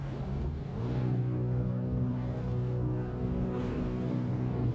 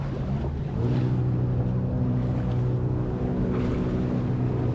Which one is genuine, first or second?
second